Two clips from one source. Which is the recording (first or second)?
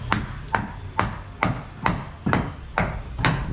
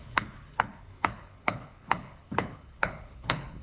first